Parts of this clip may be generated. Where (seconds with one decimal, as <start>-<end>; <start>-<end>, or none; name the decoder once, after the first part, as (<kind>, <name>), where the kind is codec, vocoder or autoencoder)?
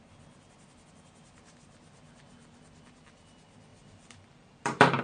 3.7-5.0 (vocoder, BigVGAN v2)